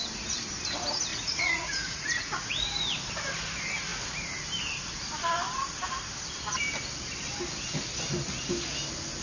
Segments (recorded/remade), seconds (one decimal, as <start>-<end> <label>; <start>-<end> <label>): 0.0-1.1 recorded; 1.1-2.8 remade; 2.8-9.2 recorded

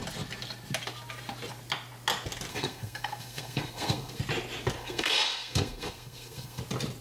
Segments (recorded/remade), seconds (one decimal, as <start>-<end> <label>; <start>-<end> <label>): 0.0-2.5 recorded; 2.5-4.2 remade; 4.2-4.8 recorded; 4.8-6.6 remade; 6.6-7.0 recorded

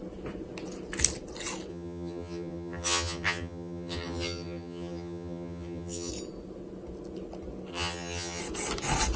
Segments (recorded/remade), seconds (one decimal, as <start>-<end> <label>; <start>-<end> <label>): 0.0-1.7 recorded; 1.7-6.1 remade; 6.1-7.7 recorded; 7.7-8.4 remade; 8.4-9.2 recorded

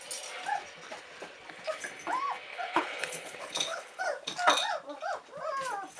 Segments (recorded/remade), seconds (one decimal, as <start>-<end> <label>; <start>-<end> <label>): 0.0-2.5 recorded; 2.5-4.0 remade; 4.0-6.0 recorded

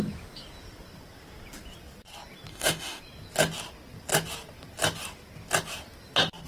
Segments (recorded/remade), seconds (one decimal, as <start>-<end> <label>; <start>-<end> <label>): 0.0-2.5 recorded; 2.5-3.0 remade; 3.0-6.5 recorded

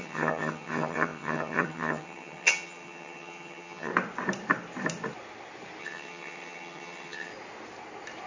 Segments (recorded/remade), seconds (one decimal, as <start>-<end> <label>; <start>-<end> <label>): 0.0-3.9 remade; 3.9-5.8 recorded; 5.8-7.3 remade; 7.3-8.3 recorded

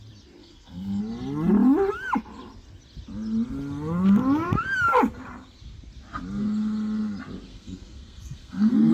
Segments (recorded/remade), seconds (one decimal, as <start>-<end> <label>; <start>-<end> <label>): 0.0-0.4 recorded; 0.4-1.0 remade; 1.0-7.5 recorded; 7.5-8.9 remade

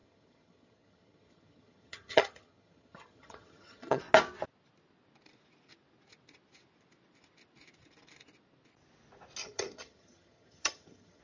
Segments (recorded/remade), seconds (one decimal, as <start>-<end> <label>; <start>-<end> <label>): 0.0-4.0 remade; 4.0-9.4 recorded; 9.4-11.2 remade